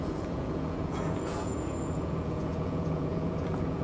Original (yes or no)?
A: no